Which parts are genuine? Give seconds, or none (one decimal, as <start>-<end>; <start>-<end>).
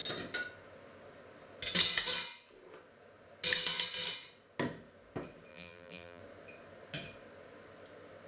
0.0-5.5; 6.2-8.3